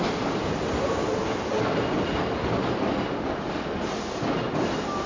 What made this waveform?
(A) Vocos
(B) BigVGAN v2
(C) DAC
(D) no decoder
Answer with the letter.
D